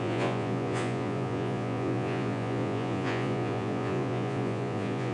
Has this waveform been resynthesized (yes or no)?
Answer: yes